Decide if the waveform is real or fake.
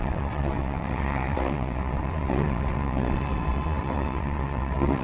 fake